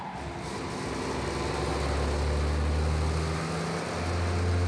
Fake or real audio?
real